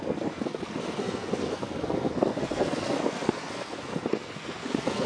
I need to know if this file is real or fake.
fake